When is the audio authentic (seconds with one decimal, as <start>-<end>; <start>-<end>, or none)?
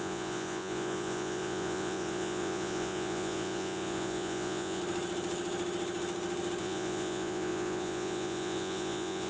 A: 4.8-6.6